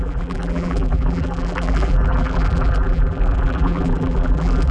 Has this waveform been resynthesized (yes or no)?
yes